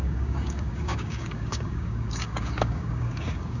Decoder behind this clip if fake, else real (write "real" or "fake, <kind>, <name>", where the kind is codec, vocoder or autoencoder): fake, codec, DAC